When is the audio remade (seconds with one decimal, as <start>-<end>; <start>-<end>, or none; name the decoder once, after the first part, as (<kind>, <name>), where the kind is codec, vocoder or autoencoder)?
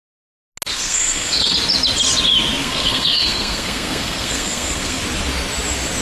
0.7-1.5 (codec, SNAC); 2.6-5.0